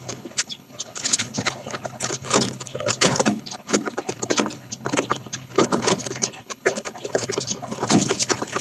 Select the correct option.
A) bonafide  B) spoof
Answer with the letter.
B